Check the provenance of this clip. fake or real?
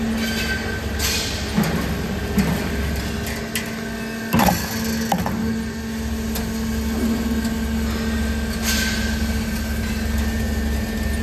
real